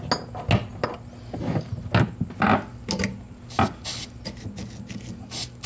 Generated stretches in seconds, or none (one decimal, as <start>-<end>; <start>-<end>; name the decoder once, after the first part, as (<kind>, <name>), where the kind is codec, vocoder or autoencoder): none